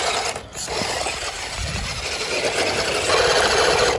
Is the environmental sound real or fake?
real